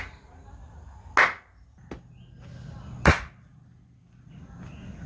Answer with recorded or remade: recorded